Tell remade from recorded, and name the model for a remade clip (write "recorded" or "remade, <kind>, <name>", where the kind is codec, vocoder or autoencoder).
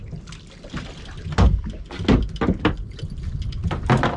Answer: recorded